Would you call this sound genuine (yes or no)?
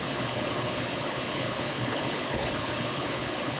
no